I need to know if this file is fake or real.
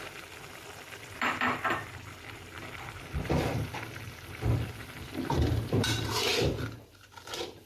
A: fake